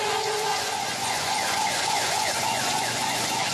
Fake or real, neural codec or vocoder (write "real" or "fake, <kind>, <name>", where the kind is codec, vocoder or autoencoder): fake, vocoder, Vocos